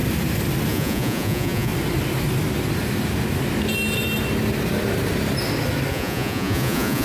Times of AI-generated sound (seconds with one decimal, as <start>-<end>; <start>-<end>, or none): 0.7-1.7; 5.9-7.0